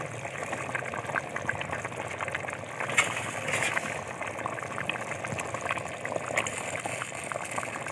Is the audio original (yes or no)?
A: yes